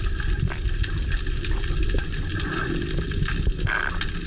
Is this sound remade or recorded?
recorded